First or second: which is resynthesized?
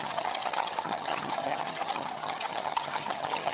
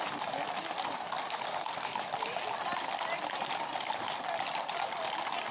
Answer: first